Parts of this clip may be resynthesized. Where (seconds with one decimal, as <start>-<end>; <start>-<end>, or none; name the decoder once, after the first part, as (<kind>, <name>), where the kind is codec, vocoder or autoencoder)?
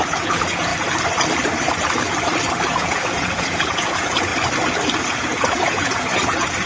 0.0-0.7 (vocoder, Vocos); 2.7-4.3; 5.0-6.7